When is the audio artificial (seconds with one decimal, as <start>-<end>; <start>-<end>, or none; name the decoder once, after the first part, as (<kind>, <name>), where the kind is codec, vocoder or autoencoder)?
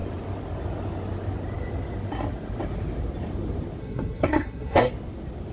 3.8-4.9 (codec, SNAC)